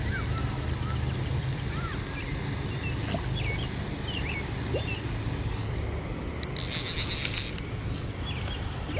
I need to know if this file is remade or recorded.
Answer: recorded